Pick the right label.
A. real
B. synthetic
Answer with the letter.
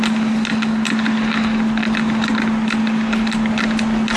A